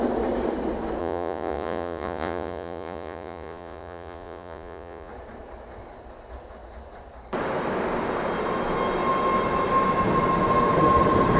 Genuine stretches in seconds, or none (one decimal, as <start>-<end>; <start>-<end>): 0.0-1.0; 5.1-11.4